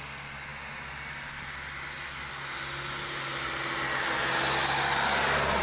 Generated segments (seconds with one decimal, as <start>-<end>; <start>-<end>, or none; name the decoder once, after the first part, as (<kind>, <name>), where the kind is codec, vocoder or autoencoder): none